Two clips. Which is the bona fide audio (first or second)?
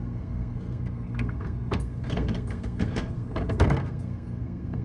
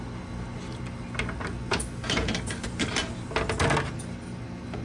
second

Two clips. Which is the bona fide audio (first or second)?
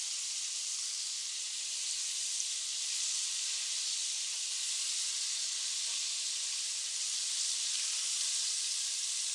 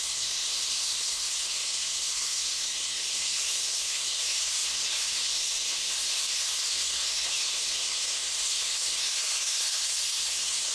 first